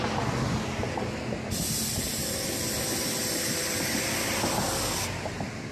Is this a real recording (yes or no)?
yes